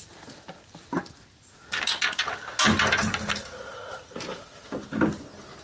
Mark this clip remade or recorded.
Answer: recorded